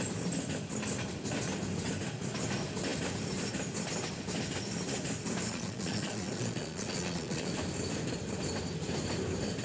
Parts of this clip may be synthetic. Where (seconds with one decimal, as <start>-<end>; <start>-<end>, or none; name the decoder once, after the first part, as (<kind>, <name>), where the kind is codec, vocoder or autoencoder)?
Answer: 5.5-7.5 (vocoder, Vocos)